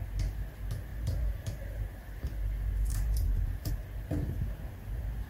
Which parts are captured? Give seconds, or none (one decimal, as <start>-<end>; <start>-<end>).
0.0-0.9; 2.2-2.9; 3.7-5.3